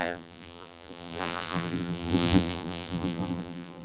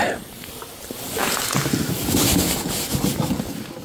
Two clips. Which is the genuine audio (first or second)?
second